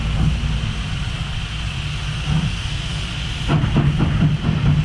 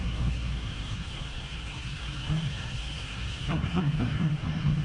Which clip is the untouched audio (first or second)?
first